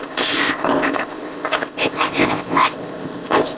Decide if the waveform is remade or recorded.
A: remade